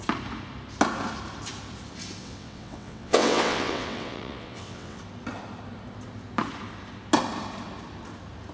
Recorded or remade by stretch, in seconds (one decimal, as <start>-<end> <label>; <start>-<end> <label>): 0.0-2.2 recorded; 2.2-5.0 remade; 5.0-8.5 recorded